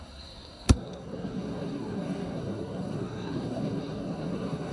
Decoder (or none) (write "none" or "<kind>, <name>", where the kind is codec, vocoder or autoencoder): codec, SNAC